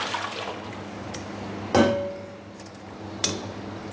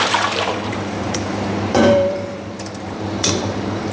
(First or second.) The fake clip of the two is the second